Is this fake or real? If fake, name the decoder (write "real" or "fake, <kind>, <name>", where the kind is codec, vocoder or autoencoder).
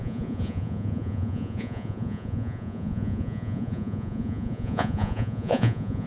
fake, vocoder, Vocos